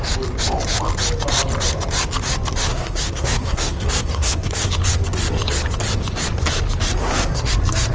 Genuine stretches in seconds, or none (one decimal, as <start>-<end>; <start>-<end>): 0.0-2.7; 4.7-7.0; 7.5-7.9